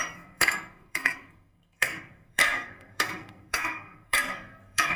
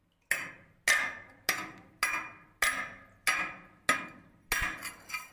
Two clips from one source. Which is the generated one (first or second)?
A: first